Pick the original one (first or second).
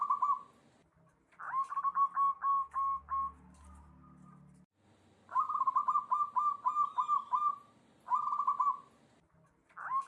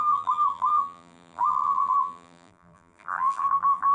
first